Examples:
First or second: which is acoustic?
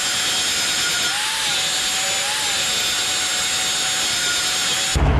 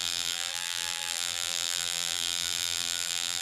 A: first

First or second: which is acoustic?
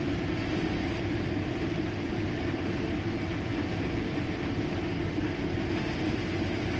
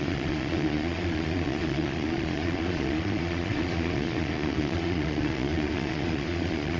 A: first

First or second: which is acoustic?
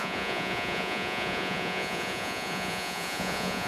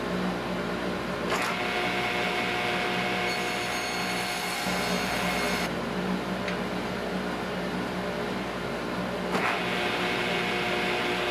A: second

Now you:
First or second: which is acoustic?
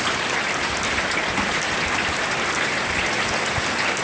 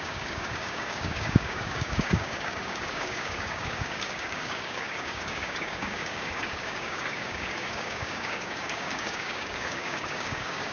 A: first